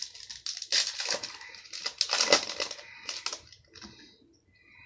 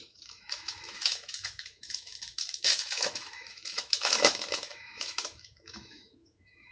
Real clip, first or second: first